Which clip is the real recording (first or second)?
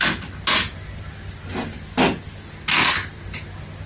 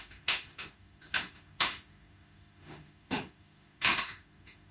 first